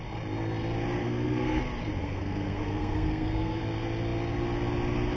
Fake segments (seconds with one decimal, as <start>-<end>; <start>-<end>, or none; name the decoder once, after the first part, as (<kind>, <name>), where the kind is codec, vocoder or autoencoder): 1.0-1.6 (codec, SNAC); 2.0-3.6